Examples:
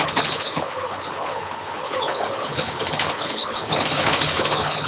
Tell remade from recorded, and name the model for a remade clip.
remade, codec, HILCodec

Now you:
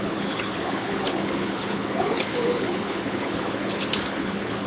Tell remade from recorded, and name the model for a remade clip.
remade, codec, HILCodec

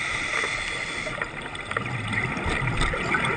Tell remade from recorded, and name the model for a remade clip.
recorded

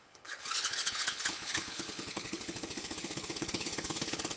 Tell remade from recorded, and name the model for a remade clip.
remade, codec, HILCodec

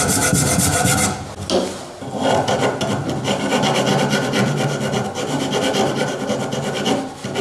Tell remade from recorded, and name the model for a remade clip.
recorded